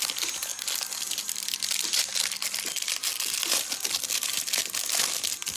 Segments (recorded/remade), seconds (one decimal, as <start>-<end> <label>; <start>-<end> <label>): 0.0-5.6 recorded